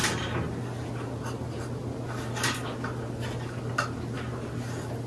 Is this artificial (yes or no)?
no